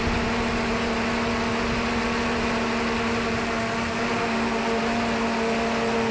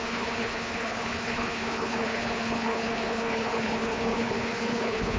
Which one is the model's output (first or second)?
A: second